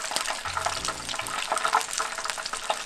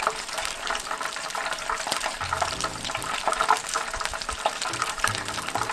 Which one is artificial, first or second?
second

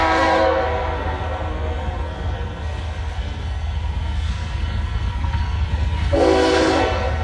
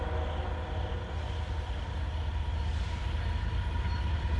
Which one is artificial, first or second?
first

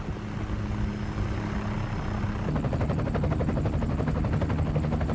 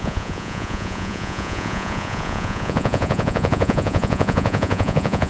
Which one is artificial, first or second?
second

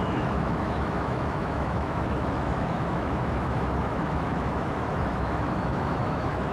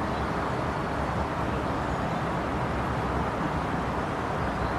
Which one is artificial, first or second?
first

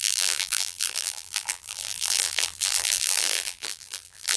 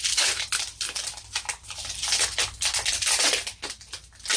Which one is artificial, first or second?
first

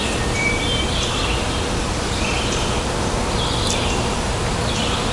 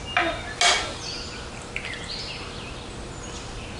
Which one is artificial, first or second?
first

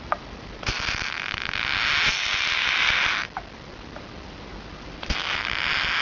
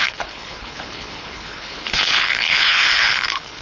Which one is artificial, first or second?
second